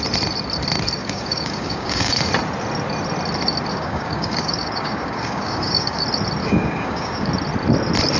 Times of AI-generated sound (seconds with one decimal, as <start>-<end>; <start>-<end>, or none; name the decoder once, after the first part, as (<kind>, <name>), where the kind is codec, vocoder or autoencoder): 1.0-2.3 (codec, DAC); 3.7-6.0; 6.4-7.3